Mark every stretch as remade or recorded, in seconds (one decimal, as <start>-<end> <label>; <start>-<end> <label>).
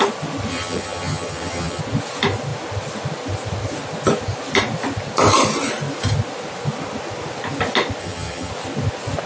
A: 0.0-0.5 recorded; 0.5-1.8 remade; 1.8-8.0 recorded; 8.0-8.5 remade; 8.5-9.3 recorded